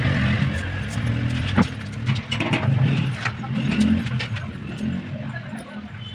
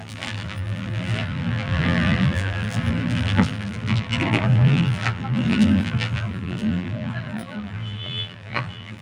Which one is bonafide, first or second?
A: first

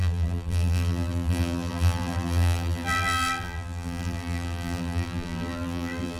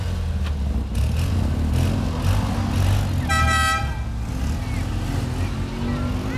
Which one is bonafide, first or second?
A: second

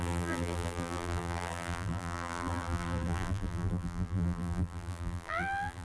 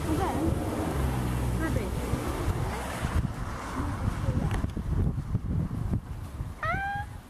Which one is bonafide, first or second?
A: second